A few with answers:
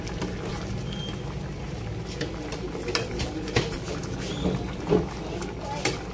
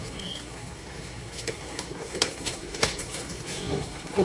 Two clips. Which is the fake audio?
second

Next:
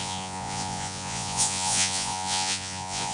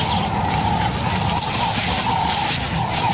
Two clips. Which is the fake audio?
first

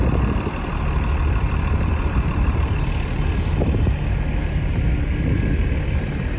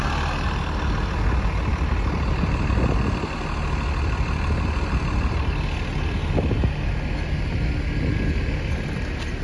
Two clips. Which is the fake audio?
first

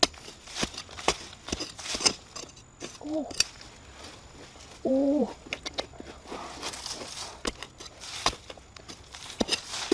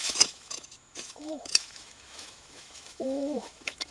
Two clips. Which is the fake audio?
second